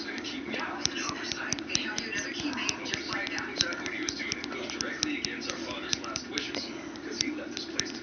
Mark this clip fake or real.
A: real